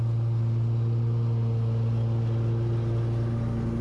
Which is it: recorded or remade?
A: recorded